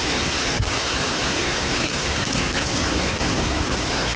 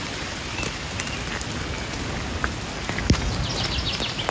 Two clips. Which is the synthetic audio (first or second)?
first